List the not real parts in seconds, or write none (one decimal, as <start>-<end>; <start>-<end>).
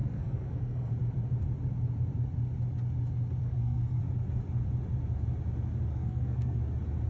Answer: 0.0-0.9; 3.4-4.0; 5.9-6.6